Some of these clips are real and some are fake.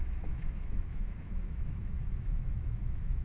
fake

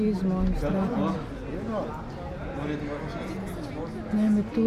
real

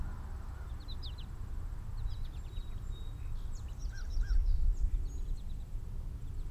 real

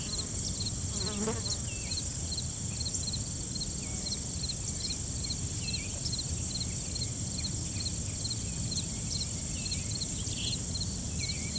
real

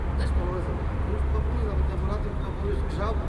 real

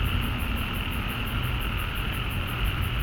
real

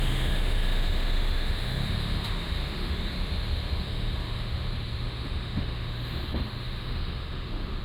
fake